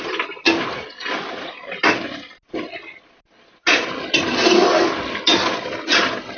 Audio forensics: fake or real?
real